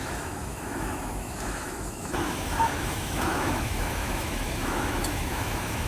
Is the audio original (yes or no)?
no